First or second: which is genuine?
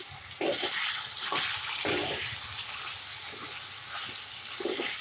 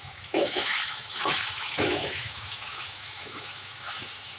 first